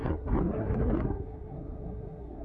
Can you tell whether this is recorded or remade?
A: remade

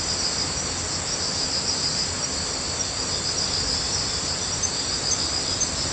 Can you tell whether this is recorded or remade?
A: recorded